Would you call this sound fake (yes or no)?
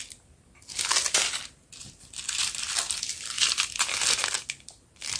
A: no